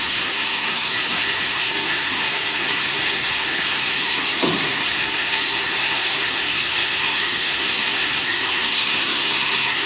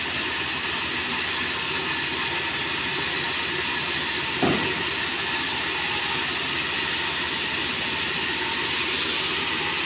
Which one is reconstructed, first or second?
first